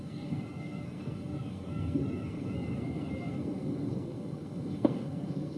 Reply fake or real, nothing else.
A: fake